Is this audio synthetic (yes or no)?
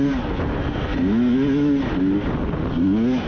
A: no